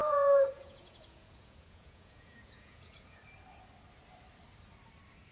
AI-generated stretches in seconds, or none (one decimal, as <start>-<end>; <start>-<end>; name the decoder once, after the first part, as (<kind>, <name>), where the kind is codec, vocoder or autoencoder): 0.0-3.2 (vocoder, Vocos)